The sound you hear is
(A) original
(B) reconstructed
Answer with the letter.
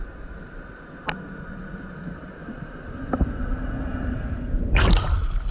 A